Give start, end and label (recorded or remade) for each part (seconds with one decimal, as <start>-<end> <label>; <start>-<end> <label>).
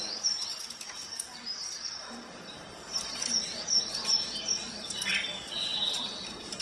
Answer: 0.0-1.1 recorded; 1.1-5.1 remade; 5.1-5.7 recorded; 5.7-6.6 remade